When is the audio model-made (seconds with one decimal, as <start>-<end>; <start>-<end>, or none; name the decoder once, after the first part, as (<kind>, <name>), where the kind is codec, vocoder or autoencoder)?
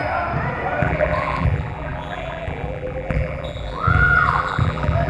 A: 0.8-5.1 (vocoder, BigVGAN v2)